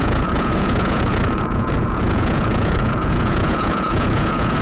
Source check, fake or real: fake